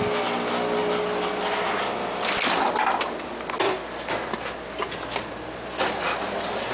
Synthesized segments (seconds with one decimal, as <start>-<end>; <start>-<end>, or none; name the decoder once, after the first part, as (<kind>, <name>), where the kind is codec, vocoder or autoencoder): none